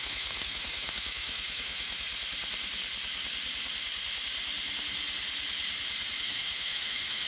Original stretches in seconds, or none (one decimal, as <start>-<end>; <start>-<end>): 2.1-6.2